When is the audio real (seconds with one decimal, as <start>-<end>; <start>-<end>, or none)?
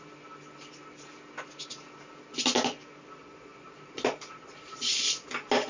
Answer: 0.0-3.2; 5.3-5.7